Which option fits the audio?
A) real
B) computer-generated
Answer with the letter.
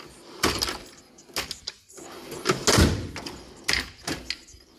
A